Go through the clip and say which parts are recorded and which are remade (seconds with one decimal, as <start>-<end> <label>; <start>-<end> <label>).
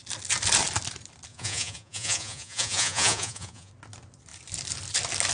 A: 0.0-1.3 recorded; 1.3-3.7 remade; 3.7-5.3 recorded